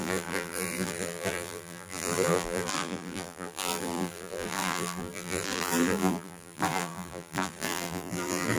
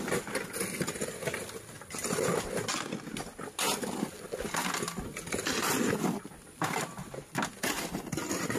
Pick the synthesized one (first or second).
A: first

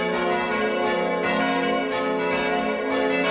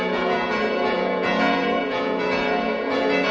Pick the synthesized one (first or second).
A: second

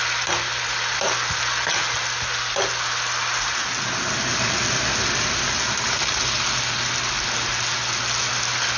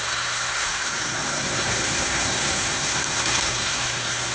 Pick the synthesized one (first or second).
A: second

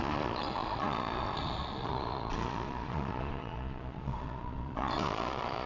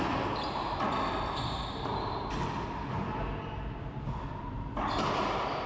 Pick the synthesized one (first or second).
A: first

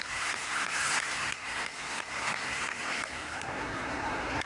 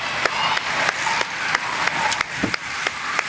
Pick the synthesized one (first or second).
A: first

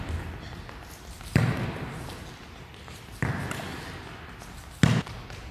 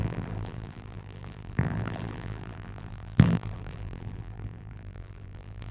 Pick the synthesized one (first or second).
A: second